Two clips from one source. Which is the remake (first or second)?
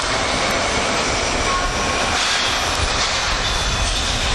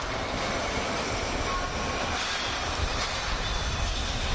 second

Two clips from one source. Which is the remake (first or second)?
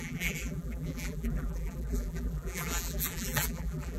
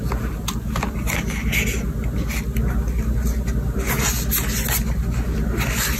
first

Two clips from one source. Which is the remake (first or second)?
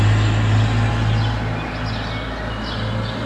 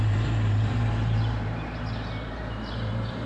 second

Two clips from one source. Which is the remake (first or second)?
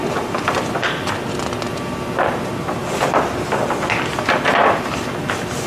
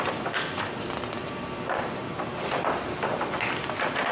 second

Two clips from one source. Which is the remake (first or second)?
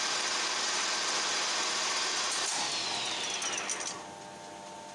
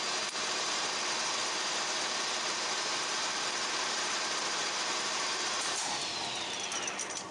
second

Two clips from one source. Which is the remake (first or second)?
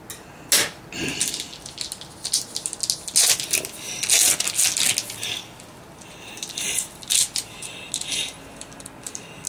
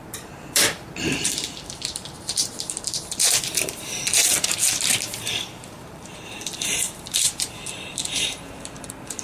second